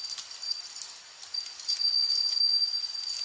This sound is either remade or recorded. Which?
recorded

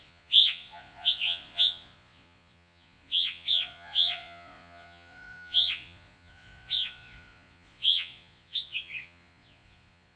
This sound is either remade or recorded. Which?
remade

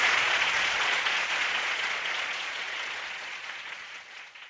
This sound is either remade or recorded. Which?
remade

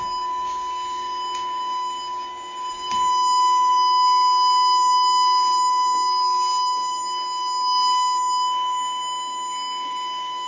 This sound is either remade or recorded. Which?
remade